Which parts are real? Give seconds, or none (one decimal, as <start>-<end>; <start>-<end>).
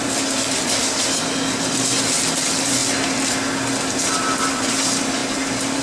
0.0-5.8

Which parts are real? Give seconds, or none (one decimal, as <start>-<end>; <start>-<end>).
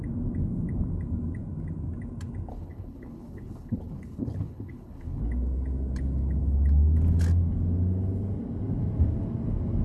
0.0-2.5; 5.2-9.8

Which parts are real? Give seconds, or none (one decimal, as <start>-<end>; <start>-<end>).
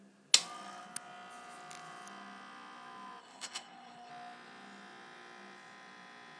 0.0-3.2; 4.1-6.4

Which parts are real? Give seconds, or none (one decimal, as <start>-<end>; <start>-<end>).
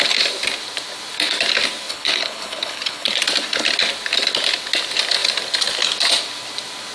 0.0-1.9; 3.1-6.9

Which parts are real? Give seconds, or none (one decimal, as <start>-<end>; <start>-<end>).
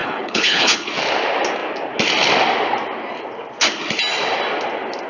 0.9-5.1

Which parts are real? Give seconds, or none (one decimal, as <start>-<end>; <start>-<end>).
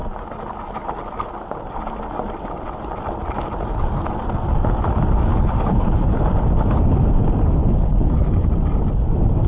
0.0-5.3; 6.2-7.6; 8.5-9.5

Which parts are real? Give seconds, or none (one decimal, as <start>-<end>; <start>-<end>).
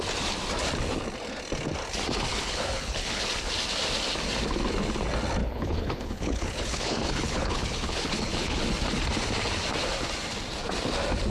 0.0-2.3; 3.2-5.4; 8.6-11.3